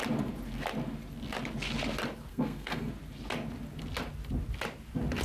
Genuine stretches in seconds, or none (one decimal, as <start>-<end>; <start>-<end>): 0.0-2.3; 2.9-5.2